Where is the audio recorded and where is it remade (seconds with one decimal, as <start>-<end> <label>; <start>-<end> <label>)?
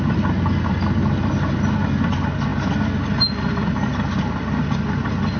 0.0-5.4 recorded